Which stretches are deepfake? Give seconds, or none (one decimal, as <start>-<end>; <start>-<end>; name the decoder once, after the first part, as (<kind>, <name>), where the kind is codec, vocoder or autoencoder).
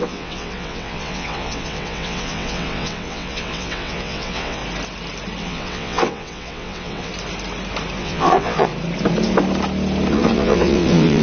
0.0-4.6 (vocoder, WaveNeXt); 5.4-7.1; 8.0-8.7; 10.1-11.2